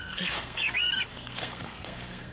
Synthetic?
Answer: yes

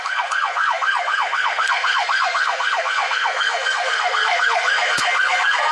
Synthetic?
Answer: yes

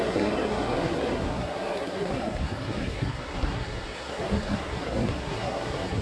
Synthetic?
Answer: yes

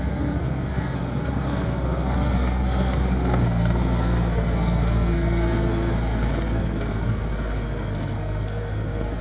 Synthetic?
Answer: yes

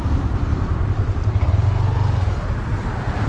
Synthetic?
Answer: no